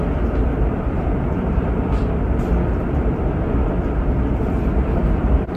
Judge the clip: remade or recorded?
remade